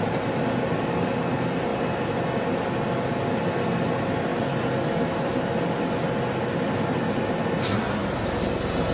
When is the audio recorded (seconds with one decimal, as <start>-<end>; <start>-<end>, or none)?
0.0-4.3; 5.3-8.9